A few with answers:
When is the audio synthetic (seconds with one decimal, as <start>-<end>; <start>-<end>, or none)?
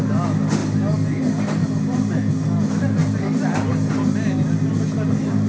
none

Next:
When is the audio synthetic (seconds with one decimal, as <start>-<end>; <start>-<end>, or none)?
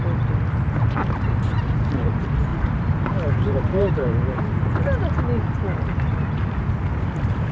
2.5-4.8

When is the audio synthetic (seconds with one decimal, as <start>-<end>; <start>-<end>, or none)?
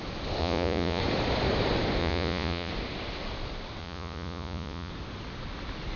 0.4-1.0; 2.0-2.7; 3.8-4.9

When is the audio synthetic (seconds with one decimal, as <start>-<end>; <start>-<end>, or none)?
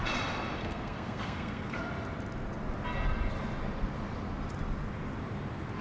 0.6-1.8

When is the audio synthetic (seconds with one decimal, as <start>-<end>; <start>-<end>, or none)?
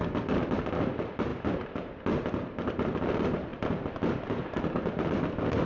1.3-3.0; 3.5-5.0